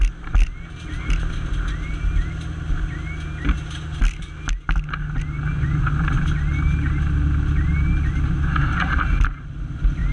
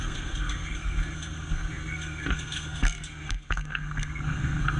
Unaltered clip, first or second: first